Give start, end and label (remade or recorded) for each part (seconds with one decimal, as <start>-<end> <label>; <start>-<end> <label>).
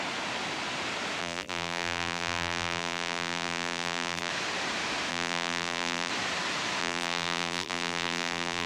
0.0-1.2 recorded; 1.2-4.3 remade; 4.3-5.1 recorded; 5.1-6.1 remade; 6.1-6.8 recorded; 6.8-8.7 remade